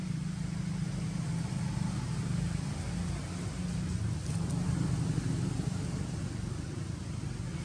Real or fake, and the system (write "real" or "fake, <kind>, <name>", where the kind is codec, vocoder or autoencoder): real